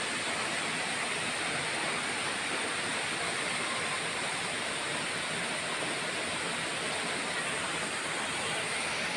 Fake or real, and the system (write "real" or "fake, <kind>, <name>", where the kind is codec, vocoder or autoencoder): real